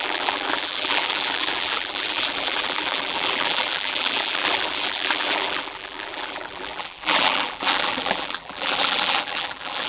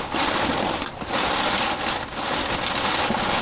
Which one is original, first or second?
second